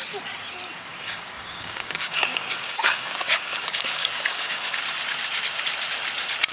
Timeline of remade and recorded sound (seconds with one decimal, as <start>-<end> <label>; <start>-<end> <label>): 0.0-0.9 recorded; 0.9-4.8 remade; 4.8-6.5 recorded